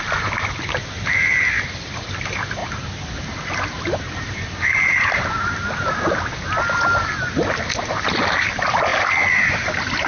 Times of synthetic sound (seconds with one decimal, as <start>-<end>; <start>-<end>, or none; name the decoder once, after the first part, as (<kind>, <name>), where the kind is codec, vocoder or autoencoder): none